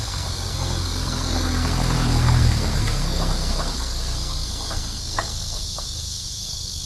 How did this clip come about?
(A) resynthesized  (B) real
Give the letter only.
A